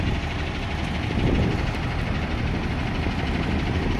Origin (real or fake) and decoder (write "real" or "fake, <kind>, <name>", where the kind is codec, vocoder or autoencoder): real